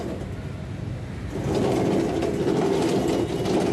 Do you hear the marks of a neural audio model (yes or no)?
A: no